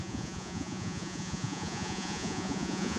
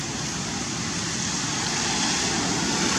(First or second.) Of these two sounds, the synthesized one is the first